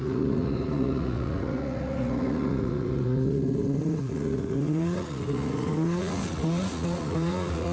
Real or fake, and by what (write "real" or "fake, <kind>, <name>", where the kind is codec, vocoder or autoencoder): fake, vocoder, Vocos